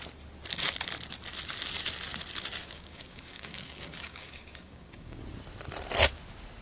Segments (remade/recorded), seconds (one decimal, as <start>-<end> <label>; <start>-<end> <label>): 0.0-2.6 recorded; 2.6-5.2 remade; 5.2-6.6 recorded